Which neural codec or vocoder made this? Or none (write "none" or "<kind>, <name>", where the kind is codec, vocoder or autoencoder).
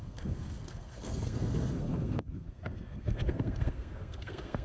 codec, SNAC